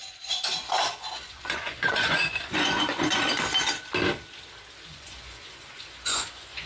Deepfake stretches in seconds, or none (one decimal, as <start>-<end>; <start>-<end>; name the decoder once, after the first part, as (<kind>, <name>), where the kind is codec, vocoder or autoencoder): 0.0-3.2 (vocoder, Vocos); 4.9-6.7